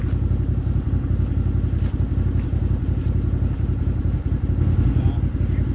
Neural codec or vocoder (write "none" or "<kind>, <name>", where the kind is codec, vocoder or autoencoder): none